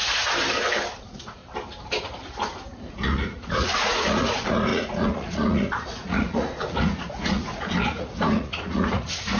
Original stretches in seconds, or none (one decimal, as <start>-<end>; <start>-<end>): 0.0-1.0; 1.4-2.9